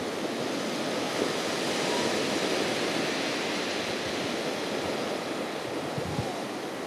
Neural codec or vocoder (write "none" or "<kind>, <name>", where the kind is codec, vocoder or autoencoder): none